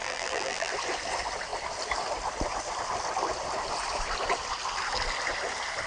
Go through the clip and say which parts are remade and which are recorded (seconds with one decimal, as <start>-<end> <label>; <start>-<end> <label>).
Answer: 0.0-0.7 remade; 0.7-5.9 recorded